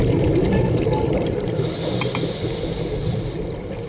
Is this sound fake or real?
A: real